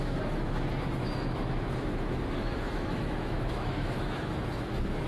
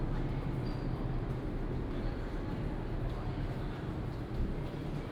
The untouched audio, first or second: second